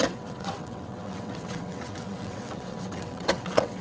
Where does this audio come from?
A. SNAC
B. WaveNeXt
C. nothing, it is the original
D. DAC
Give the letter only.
B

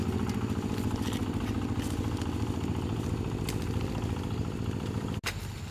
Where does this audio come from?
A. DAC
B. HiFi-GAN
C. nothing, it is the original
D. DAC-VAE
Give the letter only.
C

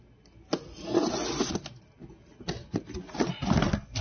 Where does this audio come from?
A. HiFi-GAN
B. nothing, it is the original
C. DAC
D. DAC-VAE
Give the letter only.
B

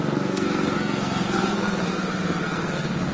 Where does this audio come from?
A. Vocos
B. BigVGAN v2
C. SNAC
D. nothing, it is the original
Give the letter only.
C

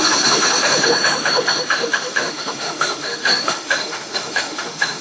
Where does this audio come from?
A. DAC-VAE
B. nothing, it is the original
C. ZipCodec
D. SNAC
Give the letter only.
A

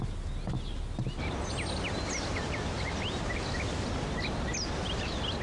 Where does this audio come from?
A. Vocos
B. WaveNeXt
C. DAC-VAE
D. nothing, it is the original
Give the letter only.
D